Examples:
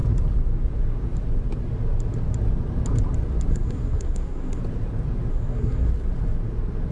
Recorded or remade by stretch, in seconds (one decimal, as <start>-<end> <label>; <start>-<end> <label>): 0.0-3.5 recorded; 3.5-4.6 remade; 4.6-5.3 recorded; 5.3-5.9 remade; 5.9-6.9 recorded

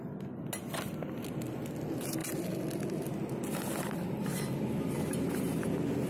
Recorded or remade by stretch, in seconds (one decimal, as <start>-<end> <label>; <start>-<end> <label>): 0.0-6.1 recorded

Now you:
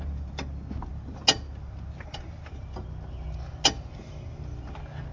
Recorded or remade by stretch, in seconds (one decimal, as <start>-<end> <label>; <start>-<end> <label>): 0.0-5.1 recorded